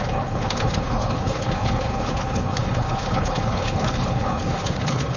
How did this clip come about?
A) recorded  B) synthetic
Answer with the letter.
B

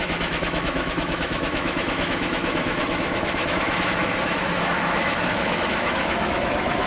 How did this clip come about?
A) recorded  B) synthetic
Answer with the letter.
B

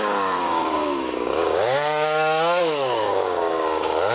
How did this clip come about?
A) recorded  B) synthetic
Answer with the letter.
B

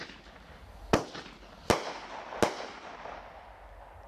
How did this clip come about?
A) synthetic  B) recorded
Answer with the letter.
B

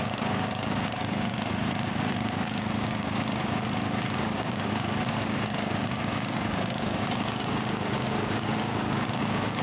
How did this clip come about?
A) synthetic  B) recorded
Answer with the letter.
A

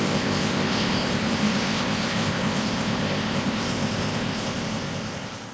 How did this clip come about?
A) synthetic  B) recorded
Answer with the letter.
A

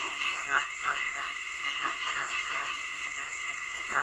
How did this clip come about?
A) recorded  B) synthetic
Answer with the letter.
B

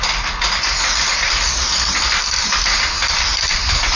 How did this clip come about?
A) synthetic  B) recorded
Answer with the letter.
B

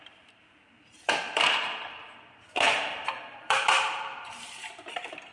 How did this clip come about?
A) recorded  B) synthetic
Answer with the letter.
B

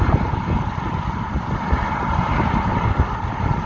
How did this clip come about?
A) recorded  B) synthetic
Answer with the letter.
A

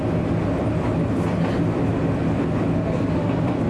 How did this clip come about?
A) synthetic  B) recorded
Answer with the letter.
B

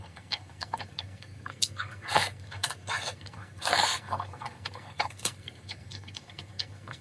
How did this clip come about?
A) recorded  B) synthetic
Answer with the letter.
B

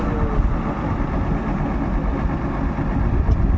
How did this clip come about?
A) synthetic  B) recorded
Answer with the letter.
B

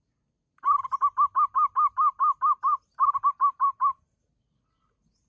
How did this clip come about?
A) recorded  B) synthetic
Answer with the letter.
A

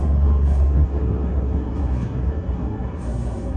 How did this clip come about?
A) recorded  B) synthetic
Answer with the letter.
B